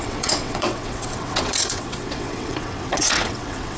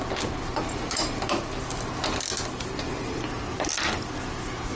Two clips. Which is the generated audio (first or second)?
first